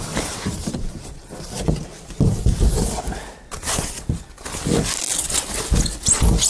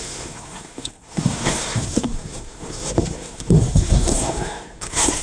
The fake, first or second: second